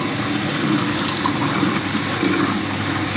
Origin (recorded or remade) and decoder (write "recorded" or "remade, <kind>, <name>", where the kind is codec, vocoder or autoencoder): recorded